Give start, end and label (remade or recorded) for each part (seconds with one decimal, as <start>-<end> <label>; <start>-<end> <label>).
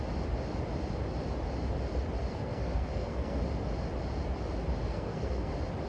0.0-2.2 recorded; 2.2-3.4 remade; 3.4-4.8 recorded; 4.8-5.5 remade; 5.5-5.9 recorded